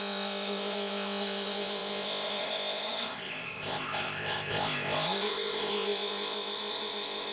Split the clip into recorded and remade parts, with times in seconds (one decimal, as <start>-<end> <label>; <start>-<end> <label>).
0.0-7.3 remade